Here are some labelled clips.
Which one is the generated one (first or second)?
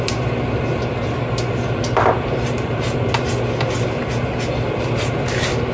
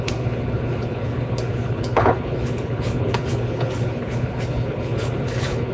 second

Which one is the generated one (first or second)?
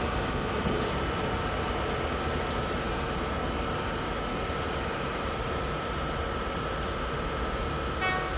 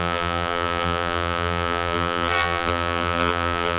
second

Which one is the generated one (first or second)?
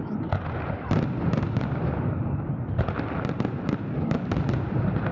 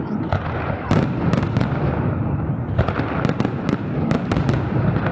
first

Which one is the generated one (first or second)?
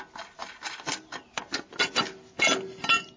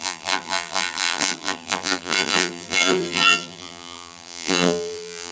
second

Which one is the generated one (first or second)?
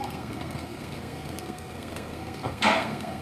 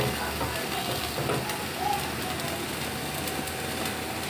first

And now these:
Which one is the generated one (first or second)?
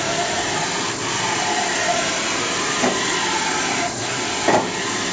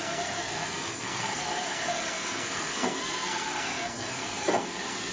second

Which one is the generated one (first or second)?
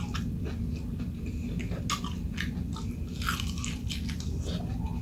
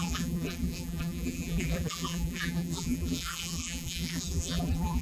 second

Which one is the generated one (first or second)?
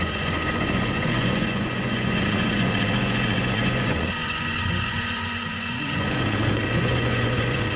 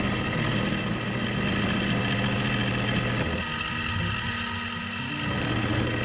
first